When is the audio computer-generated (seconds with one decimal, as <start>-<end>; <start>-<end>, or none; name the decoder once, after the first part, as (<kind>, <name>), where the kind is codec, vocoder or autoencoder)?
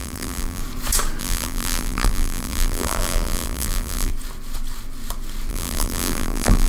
0.0-0.6 (vocoder, BigVGAN v2); 1.2-4.1; 5.5-6.7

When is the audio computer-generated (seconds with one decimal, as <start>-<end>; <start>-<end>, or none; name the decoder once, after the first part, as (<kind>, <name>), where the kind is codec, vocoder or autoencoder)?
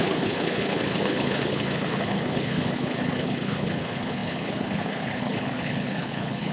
0.0-6.5 (codec, HILCodec)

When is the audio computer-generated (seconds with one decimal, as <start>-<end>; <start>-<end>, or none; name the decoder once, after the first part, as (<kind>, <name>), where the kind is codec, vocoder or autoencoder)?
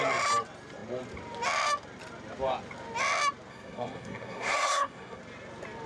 3.5-5.2 (codec, SNAC)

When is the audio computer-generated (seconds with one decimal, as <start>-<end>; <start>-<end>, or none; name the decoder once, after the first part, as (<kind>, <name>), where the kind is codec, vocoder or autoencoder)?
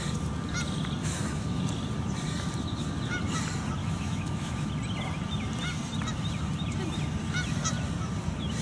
1.0-1.6 (autoencoder, DAC-VAE); 3.8-4.7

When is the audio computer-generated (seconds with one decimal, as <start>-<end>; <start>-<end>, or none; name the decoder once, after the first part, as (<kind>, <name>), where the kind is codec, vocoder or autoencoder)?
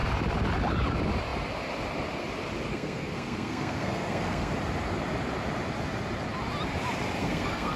2.7-4.5 (codec, SNAC); 7.2-7.8